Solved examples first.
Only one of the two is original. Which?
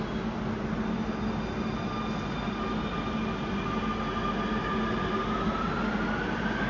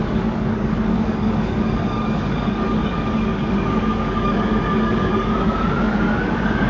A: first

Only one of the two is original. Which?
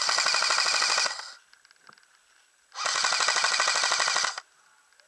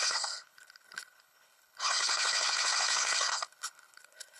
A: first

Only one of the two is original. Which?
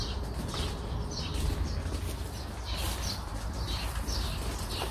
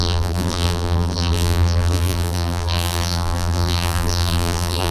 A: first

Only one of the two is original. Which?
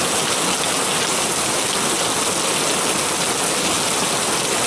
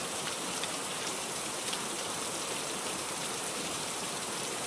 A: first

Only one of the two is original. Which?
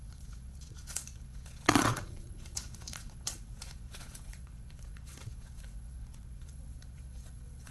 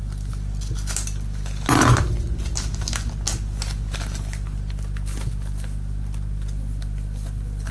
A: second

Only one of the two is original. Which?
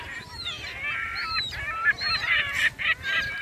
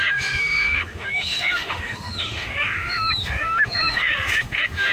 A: first